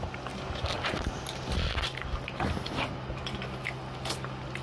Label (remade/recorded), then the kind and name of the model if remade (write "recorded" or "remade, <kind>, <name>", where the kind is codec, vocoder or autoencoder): recorded